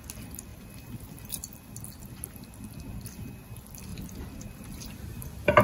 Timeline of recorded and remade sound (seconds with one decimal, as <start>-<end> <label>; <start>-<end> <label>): 0.0-5.6 recorded